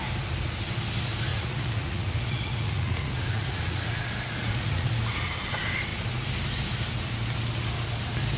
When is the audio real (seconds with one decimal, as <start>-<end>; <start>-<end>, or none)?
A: 0.0-1.3; 4.0-4.4; 4.9-8.4